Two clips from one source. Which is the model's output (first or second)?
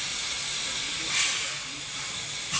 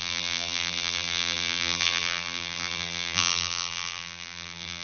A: second